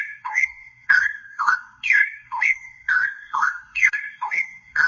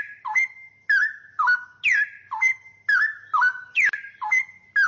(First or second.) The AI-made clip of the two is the first